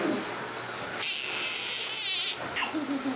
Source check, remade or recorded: recorded